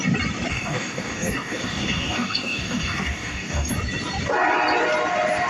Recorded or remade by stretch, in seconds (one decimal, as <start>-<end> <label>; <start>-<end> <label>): 0.0-0.5 recorded; 0.5-3.7 remade; 3.7-5.5 recorded